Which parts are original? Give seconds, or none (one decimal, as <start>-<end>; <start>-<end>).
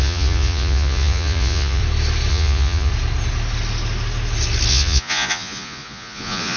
1.8-2.3; 2.9-4.7